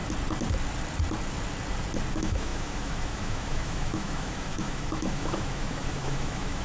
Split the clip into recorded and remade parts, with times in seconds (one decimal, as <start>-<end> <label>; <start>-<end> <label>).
0.0-2.1 recorded; 2.1-6.6 remade